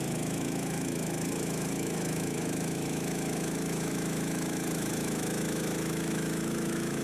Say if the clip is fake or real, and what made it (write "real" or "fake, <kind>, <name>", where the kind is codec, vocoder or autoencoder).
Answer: fake, autoencoder, DAC-VAE